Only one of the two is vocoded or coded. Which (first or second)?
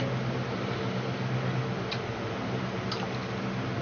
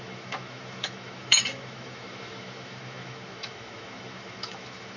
second